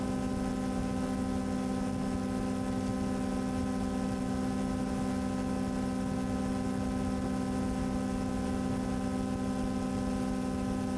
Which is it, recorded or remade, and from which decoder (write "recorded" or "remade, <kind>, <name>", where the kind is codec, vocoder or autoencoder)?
recorded